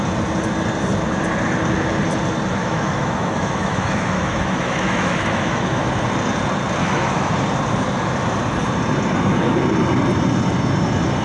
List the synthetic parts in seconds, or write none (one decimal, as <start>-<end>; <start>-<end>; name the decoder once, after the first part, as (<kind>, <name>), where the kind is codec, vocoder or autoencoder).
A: 2.6-5.9 (autoencoder, DAC-VAE); 6.8-7.3